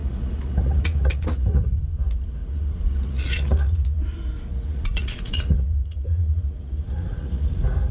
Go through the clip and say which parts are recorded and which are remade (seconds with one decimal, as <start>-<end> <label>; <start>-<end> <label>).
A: 0.0-1.8 remade; 1.8-2.4 recorded; 2.4-4.0 remade; 4.0-4.5 recorded; 4.5-7.5 remade; 7.5-7.9 recorded

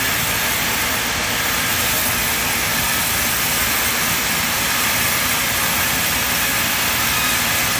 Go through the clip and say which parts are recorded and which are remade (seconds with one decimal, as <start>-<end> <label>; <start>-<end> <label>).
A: 0.0-2.7 recorded; 2.7-6.9 remade; 6.9-7.8 recorded

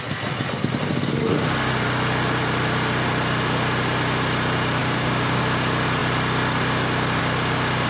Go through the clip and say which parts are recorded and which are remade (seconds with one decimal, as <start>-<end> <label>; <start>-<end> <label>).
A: 0.0-4.8 recorded; 4.8-5.4 remade; 5.4-7.9 recorded

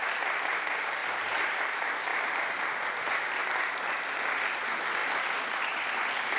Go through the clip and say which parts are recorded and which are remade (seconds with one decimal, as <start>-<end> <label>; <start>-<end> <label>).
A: 0.0-1.0 recorded; 1.0-1.6 remade; 1.6-2.1 recorded; 2.1-2.7 remade; 2.7-5.0 recorded; 5.0-5.8 remade; 5.8-6.4 recorded